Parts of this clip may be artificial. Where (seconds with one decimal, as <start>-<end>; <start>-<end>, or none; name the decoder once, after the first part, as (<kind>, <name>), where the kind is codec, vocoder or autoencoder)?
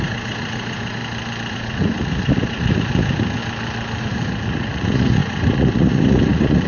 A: 0.0-1.0 (vocoder, Vocos); 1.5-3.4; 4.0-6.7